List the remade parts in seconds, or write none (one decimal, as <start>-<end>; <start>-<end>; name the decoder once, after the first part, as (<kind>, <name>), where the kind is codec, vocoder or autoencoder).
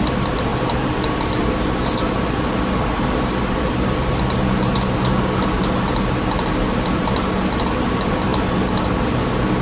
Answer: none